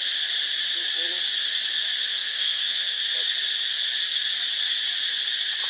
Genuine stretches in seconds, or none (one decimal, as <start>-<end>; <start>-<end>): 0.0-2.1; 3.0-5.7